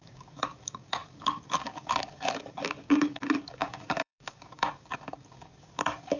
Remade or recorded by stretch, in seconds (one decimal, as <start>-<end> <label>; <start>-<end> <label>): 0.0-6.2 remade